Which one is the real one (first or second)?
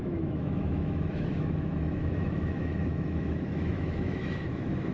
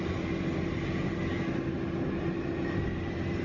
second